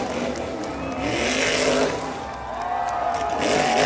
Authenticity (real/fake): real